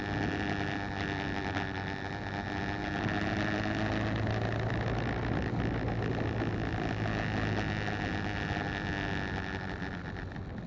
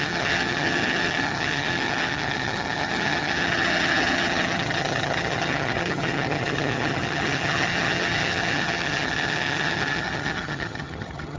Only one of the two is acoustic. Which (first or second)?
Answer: first